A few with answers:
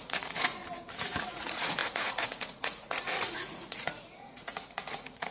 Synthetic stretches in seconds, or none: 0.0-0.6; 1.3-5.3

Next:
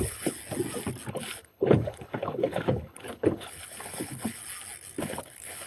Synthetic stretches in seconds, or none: 0.0-0.4; 1.1-4.4; 5.0-5.7